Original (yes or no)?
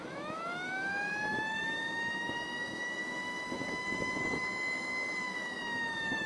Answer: no